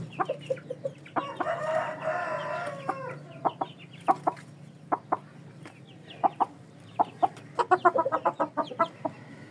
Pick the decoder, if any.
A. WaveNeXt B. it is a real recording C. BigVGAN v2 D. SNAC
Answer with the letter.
B